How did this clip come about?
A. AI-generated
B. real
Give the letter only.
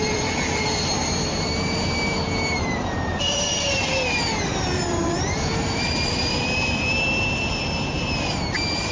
A